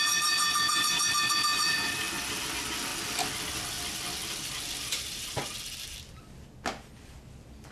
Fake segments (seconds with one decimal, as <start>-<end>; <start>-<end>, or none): none